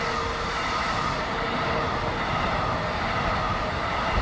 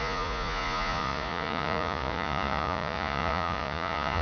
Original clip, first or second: first